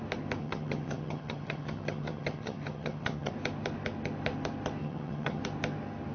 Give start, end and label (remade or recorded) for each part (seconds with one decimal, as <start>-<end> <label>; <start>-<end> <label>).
0.0-0.4 recorded; 0.4-3.3 remade; 3.3-4.8 recorded; 4.8-5.4 remade; 5.4-6.1 recorded